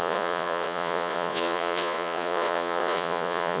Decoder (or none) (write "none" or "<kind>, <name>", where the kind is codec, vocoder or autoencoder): vocoder, Vocos